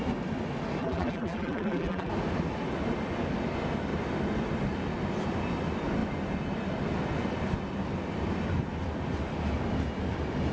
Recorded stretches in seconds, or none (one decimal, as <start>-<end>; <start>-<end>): 0.0-0.8; 2.1-10.5